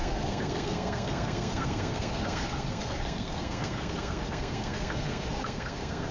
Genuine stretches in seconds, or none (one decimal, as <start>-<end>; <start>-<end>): none

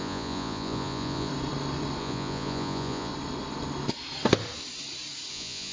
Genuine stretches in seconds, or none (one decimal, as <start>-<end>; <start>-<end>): 1.3-2.0; 3.1-5.3